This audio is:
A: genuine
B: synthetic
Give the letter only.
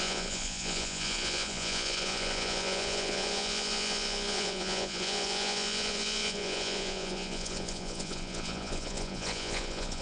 B